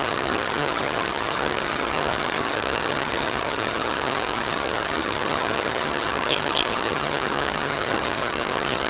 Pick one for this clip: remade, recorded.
remade